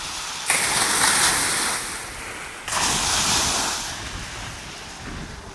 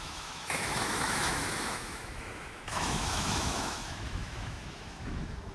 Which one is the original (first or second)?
first